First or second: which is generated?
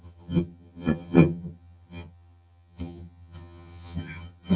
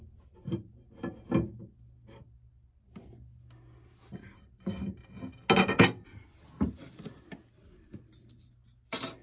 first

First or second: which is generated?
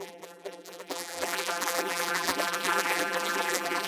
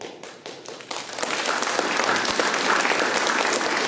first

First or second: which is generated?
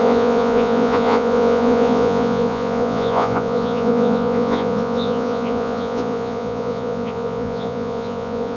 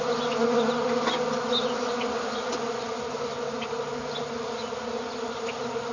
first